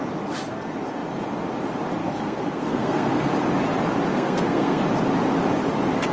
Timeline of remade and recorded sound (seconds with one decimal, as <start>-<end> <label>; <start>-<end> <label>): 0.0-2.0 recorded; 2.0-3.3 remade; 3.3-4.1 recorded; 4.1-4.8 remade; 4.8-6.1 recorded